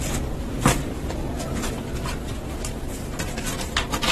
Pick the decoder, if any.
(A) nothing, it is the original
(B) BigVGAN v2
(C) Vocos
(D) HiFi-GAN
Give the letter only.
A